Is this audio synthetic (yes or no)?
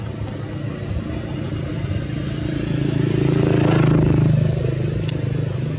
no